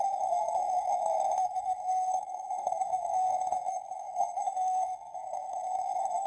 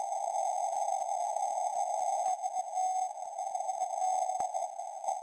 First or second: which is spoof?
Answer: first